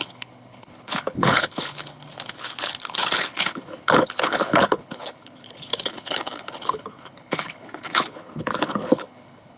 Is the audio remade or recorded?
remade